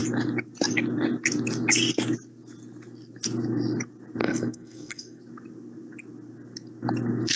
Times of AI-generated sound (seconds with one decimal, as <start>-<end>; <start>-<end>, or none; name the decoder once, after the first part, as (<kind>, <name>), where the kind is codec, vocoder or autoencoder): 4.2-5.2 (codec, SNAC)